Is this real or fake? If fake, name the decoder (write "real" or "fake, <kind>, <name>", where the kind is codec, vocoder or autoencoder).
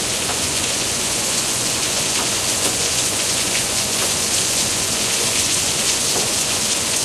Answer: fake, vocoder, Vocos